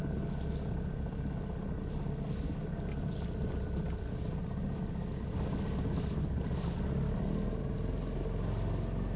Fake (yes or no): no